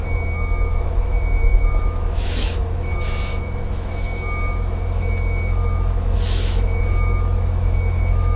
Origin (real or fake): fake